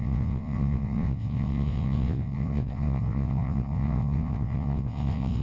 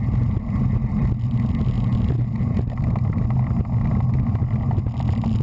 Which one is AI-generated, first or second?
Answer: first